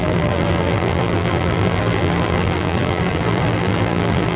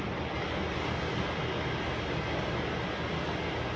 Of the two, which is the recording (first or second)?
second